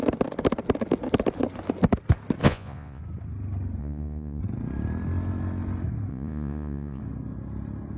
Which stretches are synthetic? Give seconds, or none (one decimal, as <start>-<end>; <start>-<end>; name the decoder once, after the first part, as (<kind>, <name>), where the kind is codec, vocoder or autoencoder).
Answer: 2.4-3.0 (vocoder, Vocos); 3.8-4.4; 6.1-7.0